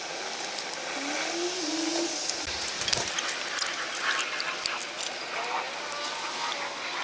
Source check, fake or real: real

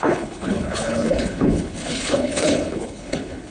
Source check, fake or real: fake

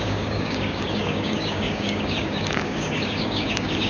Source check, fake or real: fake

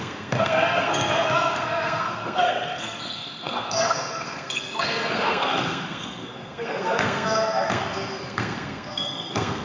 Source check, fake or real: fake